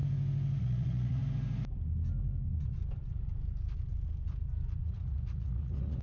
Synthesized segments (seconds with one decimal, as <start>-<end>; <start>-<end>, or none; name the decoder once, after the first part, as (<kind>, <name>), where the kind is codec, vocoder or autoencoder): 0.6-1.2 (vocoder, Vocos); 4.8-6.0